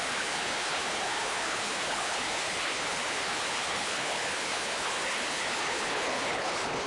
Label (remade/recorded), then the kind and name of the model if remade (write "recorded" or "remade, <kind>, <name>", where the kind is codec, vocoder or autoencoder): remade, codec, HILCodec